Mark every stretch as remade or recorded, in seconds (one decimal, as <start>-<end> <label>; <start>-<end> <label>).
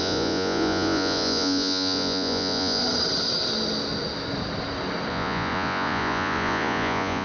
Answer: 0.0-2.8 remade; 2.8-5.1 recorded; 5.1-7.2 remade